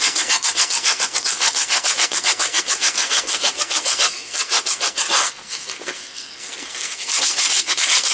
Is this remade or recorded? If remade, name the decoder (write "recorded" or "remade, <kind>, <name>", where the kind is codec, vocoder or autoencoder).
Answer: remade, codec, SNAC